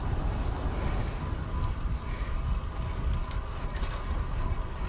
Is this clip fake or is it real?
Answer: real